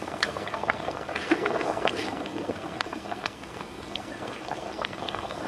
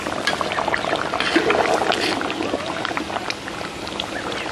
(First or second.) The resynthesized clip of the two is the first